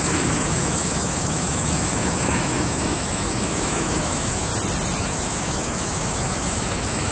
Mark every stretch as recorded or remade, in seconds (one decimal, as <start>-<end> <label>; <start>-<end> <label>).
0.0-4.5 remade; 4.5-5.0 recorded; 5.0-7.1 remade